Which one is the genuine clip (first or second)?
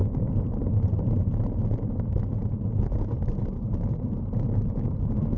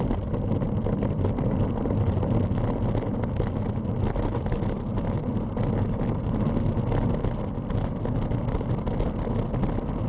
second